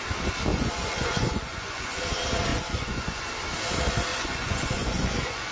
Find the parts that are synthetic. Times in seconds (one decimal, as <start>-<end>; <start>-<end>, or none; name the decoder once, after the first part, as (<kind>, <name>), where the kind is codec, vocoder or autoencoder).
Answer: 0.5-2.0 (vocoder, Vocos); 2.5-3.3; 4.1-5.5